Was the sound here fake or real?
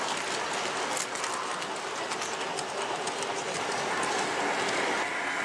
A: real